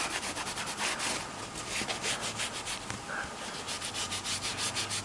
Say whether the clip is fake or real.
real